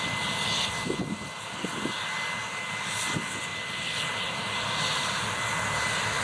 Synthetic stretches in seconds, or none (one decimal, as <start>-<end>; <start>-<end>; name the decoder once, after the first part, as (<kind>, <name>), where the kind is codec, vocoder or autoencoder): none